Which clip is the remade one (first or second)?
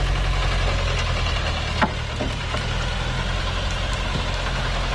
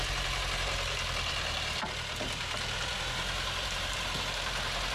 second